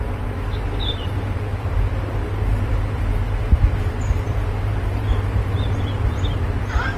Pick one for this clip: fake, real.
fake